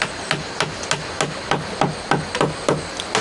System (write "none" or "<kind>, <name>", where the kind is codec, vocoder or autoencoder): none